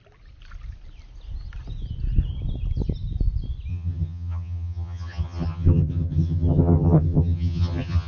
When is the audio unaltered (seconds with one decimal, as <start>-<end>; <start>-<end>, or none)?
0.0-3.7